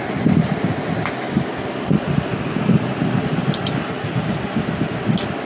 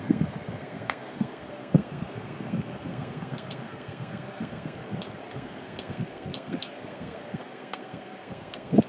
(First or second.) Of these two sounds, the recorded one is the first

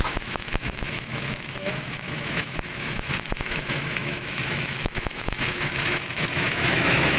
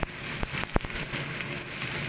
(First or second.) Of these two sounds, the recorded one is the second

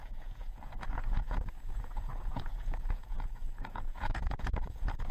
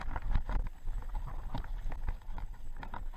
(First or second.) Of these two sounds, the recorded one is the second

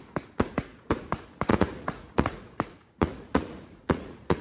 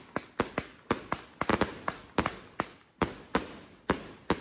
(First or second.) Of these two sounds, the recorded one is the second